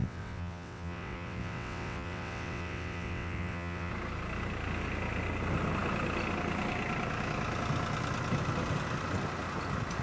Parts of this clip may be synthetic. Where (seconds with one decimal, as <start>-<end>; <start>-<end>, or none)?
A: 0.0-3.9